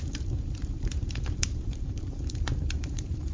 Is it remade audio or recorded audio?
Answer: remade